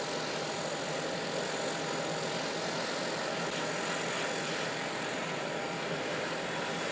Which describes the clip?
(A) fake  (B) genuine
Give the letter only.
B